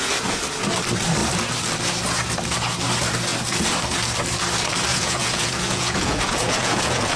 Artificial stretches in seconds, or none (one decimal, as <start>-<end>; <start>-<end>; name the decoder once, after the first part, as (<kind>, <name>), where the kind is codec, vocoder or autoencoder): 4.9-7.2 (vocoder, Vocos)